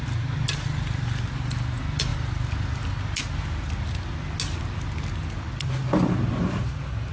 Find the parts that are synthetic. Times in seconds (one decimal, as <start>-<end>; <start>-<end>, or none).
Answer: none